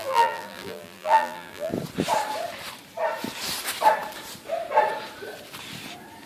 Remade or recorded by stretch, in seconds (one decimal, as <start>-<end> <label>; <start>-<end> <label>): 0.0-1.7 remade; 1.7-6.3 recorded